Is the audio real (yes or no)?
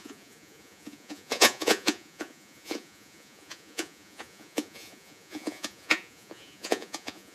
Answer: no